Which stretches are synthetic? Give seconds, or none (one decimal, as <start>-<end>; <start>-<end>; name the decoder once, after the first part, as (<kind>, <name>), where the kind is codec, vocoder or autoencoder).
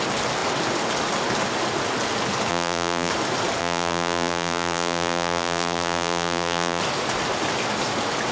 2.5-3.1 (vocoder, BigVGAN v2); 3.6-6.8